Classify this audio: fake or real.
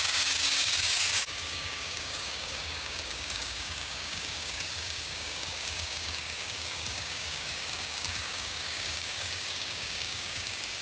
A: fake